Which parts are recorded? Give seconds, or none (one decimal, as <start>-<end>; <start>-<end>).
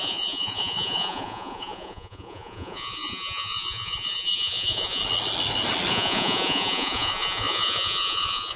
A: 5.0-5.9